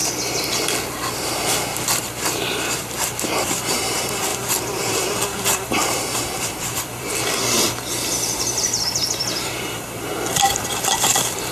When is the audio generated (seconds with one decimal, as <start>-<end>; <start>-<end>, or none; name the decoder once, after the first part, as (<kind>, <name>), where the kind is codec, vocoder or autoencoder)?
3.4-11.5 (vocoder, BigVGAN v2)